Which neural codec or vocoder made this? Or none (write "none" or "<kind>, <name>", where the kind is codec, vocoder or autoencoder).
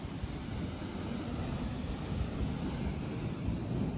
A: none